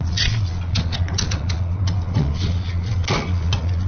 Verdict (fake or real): fake